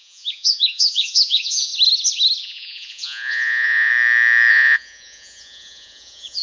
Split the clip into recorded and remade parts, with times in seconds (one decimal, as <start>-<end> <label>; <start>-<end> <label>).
0.0-1.7 remade; 1.7-2.4 recorded; 2.4-3.9 remade; 3.9-4.5 recorded; 4.5-6.4 remade